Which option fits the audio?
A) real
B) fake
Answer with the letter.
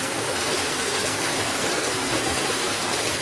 B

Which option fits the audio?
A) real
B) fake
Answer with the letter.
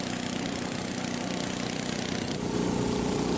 A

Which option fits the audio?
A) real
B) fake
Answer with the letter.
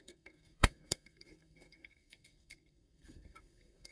B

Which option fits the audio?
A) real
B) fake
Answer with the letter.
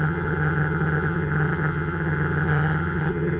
B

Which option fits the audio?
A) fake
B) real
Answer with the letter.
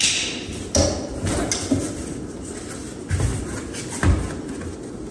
B